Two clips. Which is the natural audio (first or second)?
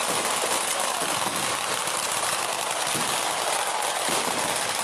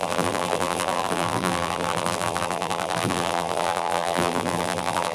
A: first